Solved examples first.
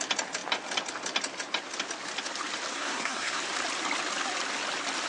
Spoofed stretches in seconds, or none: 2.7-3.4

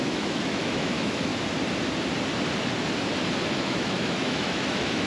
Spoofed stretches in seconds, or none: 0.0-1.3; 3.5-5.1

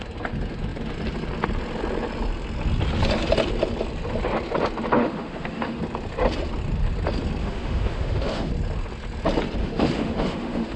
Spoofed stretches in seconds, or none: 5.0-5.8; 7.4-8.5; 9.6-10.8

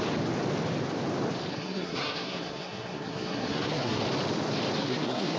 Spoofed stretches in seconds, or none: 1.5-4.0; 4.8-5.4

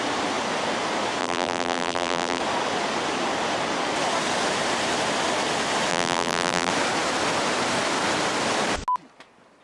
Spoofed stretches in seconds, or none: 1.2-2.4; 5.9-6.7

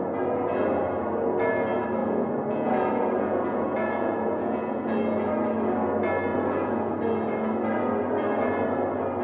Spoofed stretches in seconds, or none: 2.0-5.3; 6.3-6.9

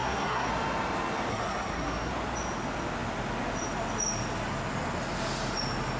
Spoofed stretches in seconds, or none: 0.0-0.5; 1.3-2.1

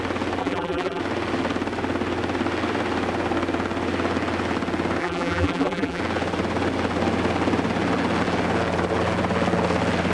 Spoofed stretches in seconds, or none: 0.4-1.0; 5.0-6.0